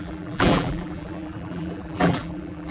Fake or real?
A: fake